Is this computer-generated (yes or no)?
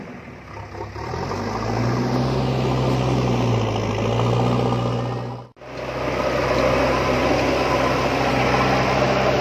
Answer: no